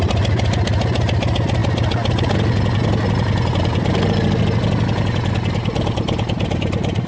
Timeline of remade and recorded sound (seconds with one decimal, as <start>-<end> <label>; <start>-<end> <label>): 0.0-7.1 recorded